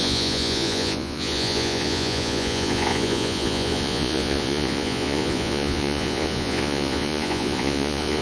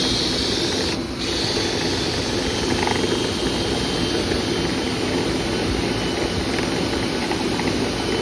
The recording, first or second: second